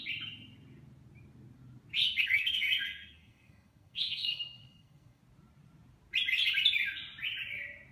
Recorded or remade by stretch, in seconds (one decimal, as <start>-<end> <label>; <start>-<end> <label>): 0.0-2.2 recorded; 2.2-5.2 remade; 5.2-7.9 recorded